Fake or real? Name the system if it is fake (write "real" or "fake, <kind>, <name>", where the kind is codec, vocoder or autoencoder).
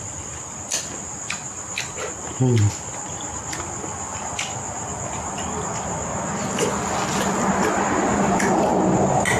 real